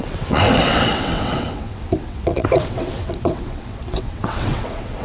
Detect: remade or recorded remade